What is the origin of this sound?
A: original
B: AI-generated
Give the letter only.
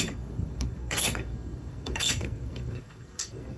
B